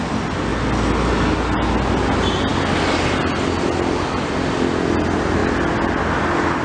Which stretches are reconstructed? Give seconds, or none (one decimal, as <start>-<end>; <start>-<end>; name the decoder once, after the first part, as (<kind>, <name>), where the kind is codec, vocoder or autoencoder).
none